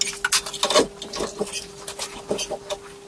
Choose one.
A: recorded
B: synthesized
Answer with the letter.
A